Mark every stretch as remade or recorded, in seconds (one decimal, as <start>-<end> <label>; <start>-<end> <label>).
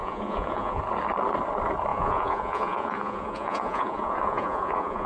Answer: 0.0-0.8 remade; 0.8-1.9 recorded; 1.9-5.1 remade